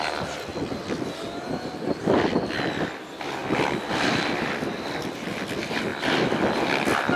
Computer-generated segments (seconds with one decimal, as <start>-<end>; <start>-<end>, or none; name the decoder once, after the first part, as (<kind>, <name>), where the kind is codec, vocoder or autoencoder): none